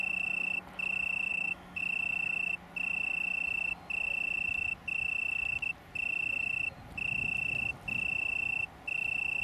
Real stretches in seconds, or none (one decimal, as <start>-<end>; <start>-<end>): 0.0-1.3; 1.8-9.4